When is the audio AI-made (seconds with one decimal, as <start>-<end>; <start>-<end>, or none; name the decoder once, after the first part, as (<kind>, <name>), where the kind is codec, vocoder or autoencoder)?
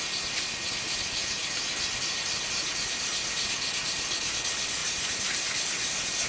4.8-5.4 (vocoder, BigVGAN v2)